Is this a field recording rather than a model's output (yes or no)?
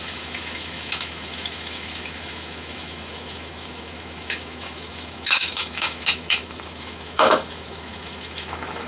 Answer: no